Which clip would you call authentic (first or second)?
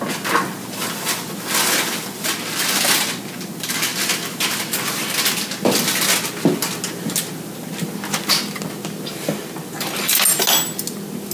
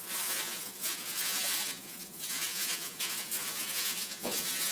first